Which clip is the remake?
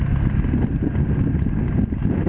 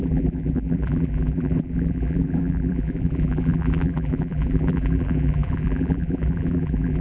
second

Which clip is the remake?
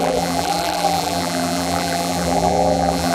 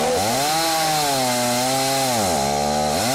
first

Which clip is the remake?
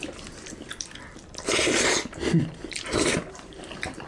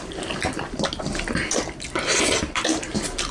first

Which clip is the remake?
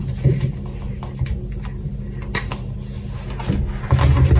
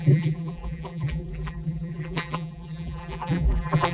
second